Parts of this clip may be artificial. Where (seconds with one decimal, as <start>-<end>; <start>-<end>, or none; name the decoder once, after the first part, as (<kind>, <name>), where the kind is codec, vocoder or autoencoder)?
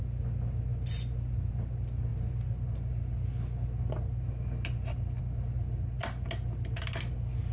none